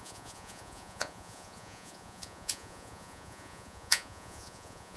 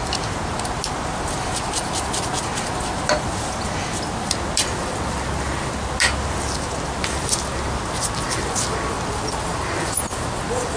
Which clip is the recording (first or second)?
second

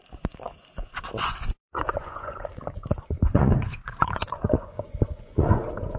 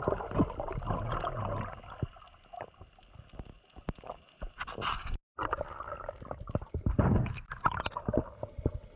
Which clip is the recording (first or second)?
second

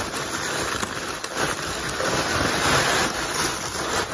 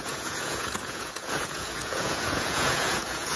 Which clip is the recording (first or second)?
first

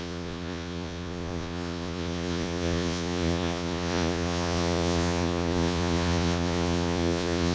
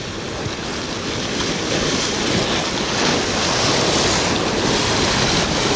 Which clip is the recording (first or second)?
second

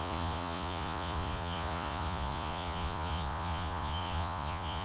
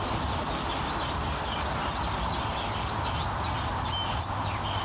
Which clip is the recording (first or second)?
second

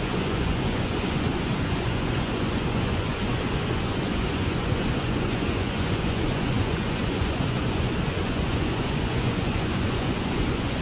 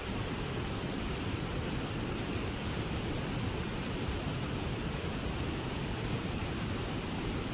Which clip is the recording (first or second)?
second